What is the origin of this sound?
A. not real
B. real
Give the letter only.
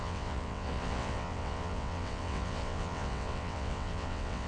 A